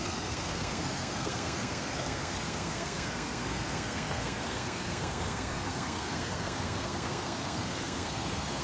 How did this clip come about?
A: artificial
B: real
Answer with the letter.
A